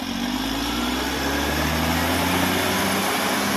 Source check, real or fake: real